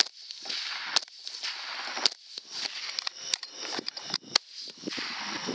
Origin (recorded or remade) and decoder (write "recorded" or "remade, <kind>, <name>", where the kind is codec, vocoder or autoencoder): recorded